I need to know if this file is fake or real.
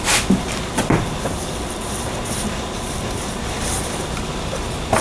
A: real